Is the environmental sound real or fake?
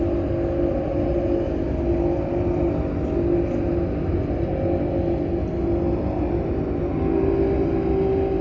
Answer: real